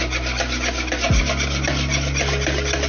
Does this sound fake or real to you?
real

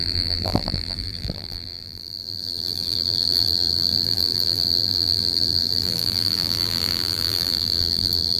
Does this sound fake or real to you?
fake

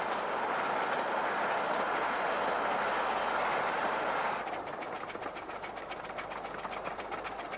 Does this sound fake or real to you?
real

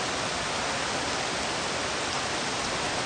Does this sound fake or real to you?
real